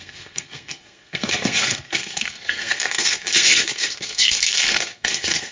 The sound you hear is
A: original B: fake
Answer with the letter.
B